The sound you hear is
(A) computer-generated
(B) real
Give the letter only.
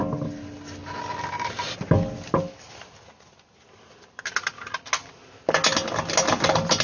B